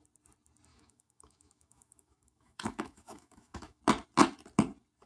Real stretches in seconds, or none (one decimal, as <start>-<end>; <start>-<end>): 0.0-0.7; 3.8-5.1